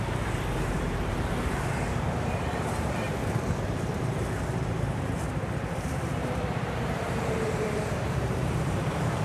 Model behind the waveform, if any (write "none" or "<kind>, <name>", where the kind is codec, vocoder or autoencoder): vocoder, BigVGAN v2